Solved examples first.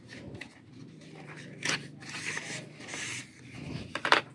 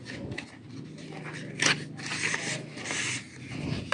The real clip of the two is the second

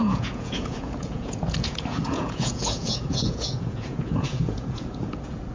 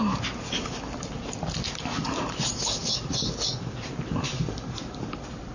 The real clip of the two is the second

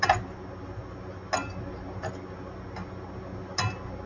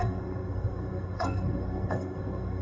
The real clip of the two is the first